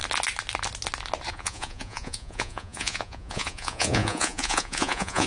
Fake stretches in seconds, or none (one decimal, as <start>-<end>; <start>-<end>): 1.3-5.3